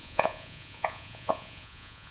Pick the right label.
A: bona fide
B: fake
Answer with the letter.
B